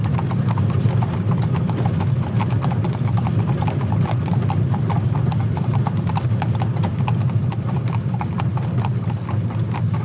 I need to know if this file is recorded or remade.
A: recorded